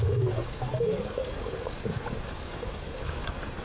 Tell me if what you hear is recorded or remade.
remade